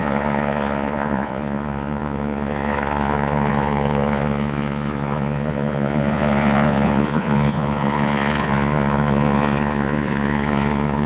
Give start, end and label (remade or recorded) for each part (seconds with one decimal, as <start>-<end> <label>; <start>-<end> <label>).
0.0-11.1 remade

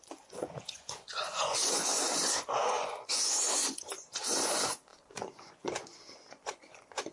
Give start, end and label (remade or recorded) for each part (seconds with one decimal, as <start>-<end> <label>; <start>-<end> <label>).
0.0-7.1 remade

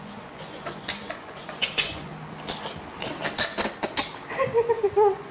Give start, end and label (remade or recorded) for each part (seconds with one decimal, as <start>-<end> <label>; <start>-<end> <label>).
0.0-2.1 remade; 2.1-4.7 recorded; 4.7-5.3 remade

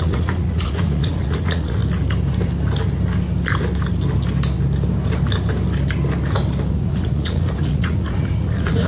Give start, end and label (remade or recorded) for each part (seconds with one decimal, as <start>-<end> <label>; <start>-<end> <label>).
0.0-1.8 remade; 1.8-6.7 recorded; 6.7-8.9 remade

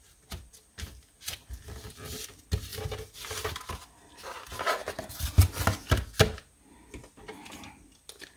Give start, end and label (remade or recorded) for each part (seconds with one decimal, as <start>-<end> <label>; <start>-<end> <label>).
0.0-8.4 recorded

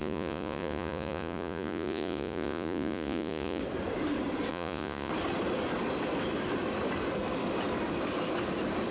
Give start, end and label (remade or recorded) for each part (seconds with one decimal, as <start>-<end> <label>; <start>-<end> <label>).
0.0-3.6 remade; 3.6-4.5 recorded; 4.5-5.1 remade; 5.1-8.9 recorded

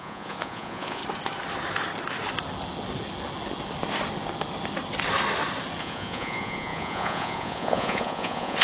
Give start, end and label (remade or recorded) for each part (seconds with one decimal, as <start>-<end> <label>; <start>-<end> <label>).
0.0-1.0 remade; 1.0-5.8 recorded; 5.8-8.6 remade

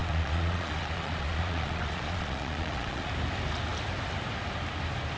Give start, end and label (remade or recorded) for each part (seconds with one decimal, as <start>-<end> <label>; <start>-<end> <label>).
0.0-3.1 remade; 3.1-5.2 recorded